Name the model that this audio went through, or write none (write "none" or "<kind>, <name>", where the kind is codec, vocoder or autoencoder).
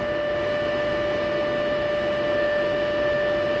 none